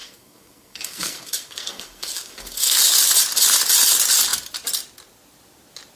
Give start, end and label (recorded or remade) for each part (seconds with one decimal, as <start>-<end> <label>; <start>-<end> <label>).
0.0-2.8 remade; 2.8-6.0 recorded